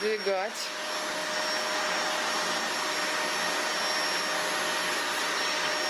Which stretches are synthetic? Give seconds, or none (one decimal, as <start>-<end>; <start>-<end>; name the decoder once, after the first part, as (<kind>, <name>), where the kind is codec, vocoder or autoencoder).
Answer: none